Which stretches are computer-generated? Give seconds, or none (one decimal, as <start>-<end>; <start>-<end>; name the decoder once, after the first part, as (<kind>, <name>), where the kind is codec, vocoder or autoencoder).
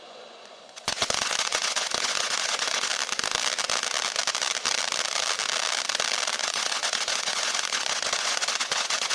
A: 0.0-2.9 (vocoder, Vocos); 6.4-9.1